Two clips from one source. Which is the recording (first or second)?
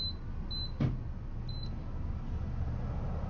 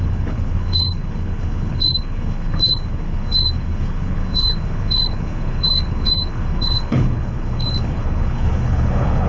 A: first